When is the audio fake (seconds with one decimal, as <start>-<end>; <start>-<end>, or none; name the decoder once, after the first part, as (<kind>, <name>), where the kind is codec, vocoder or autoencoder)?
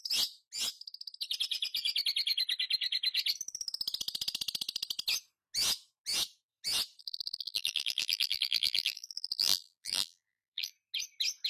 7.0-10.7 (vocoder, BigVGAN v2)